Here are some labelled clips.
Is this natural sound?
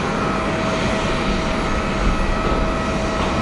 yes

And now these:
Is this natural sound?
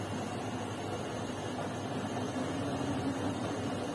yes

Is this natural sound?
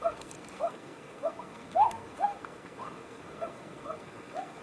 no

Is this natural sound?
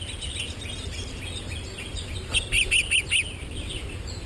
yes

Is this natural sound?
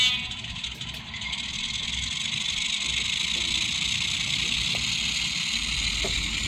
yes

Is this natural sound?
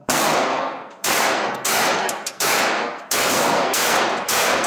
no